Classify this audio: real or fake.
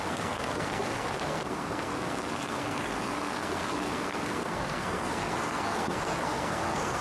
fake